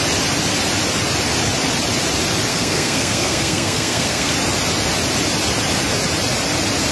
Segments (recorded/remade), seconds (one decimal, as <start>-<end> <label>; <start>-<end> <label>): 0.0-2.5 recorded; 2.5-4.3 remade; 4.3-6.9 recorded